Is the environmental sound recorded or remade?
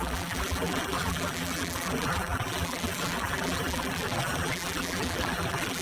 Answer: remade